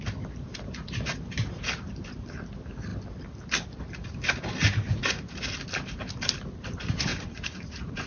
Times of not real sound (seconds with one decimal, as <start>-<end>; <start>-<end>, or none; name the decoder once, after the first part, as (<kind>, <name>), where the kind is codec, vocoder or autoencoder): 4.9-5.4 (vocoder, Vocos); 7.1-8.1